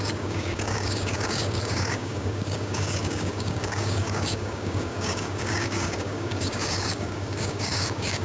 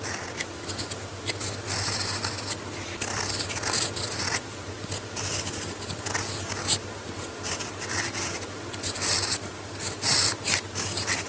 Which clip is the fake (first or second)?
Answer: first